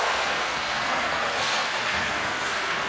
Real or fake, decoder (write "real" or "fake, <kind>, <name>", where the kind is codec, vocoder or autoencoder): fake, codec, SNAC